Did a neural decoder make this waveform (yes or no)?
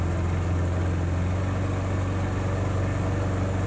no